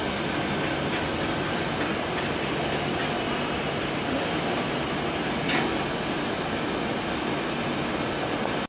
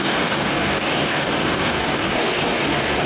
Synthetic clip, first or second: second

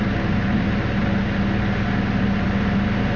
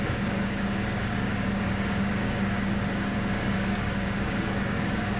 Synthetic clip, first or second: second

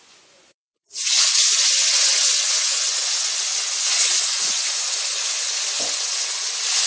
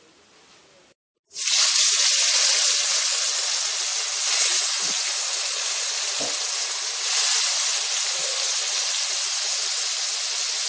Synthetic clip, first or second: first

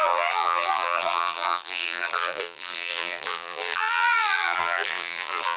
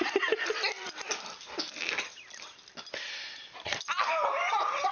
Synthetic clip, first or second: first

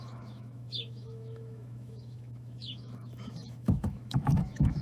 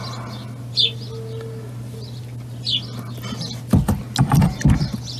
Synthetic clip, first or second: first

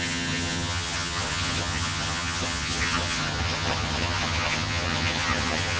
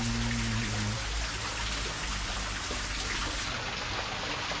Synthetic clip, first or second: first